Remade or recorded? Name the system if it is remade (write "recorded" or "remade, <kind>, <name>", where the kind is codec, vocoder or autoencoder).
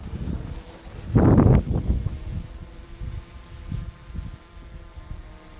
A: recorded